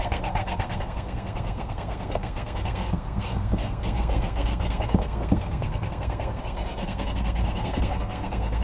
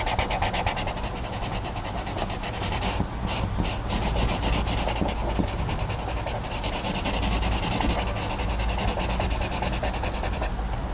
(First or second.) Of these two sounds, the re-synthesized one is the first